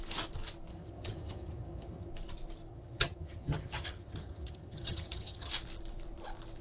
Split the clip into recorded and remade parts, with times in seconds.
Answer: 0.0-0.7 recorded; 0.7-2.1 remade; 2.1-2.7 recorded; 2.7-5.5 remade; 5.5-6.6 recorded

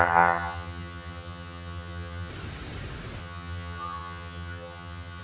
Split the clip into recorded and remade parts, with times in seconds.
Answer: 0.0-2.3 remade; 2.3-3.2 recorded; 3.2-5.2 remade

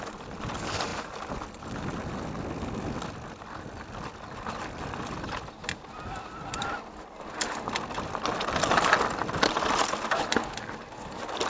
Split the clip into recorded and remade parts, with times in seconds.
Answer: 0.0-11.5 recorded

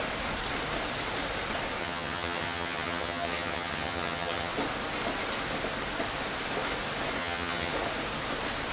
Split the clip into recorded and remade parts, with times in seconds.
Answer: 0.0-1.8 recorded; 1.8-4.5 remade; 4.5-7.2 recorded; 7.2-7.7 remade; 7.7-8.7 recorded

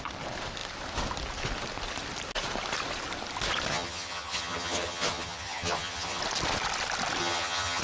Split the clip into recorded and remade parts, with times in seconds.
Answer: 0.0-3.7 recorded; 3.7-6.2 remade; 6.2-7.2 recorded; 7.2-7.8 remade

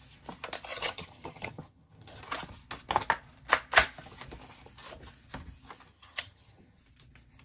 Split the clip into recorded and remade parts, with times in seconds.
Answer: 0.0-0.7 recorded; 0.7-2.2 remade; 2.2-5.9 recorded; 5.9-6.8 remade; 6.8-7.4 recorded